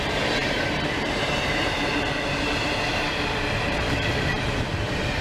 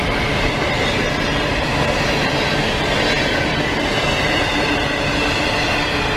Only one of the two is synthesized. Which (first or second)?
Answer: first